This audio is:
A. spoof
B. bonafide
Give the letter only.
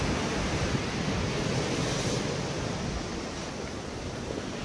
B